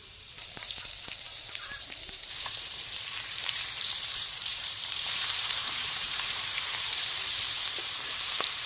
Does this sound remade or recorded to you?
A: remade